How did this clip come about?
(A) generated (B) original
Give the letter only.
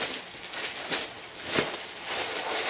B